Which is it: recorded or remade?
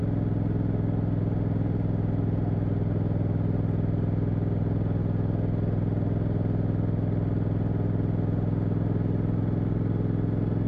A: recorded